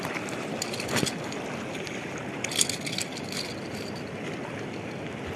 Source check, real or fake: real